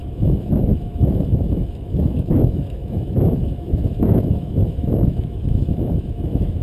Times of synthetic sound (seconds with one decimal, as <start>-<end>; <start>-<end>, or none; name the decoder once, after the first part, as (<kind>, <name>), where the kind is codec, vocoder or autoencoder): 0.0-6.6 (autoencoder, DAC-VAE)